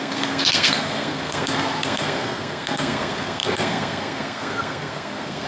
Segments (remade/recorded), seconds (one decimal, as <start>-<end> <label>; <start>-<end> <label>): 0.0-5.5 remade